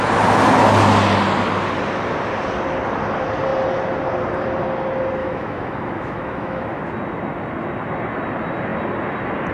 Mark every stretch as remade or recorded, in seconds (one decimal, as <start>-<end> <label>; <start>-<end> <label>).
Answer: 0.0-5.2 recorded; 5.2-6.8 remade; 6.8-9.5 recorded